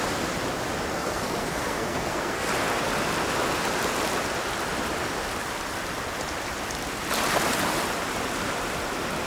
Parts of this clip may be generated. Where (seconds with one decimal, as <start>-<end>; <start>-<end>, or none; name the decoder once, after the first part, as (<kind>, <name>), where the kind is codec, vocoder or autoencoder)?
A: 0.9-2.5 (codec, SNAC)

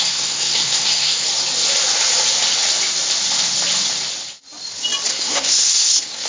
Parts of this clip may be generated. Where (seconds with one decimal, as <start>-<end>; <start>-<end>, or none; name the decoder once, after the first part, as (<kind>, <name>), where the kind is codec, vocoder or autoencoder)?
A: 0.0-1.3 (codec, SNAC); 5.1-6.3